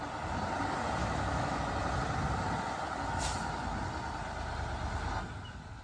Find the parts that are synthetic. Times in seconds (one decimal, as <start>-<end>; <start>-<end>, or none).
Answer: 1.0-1.6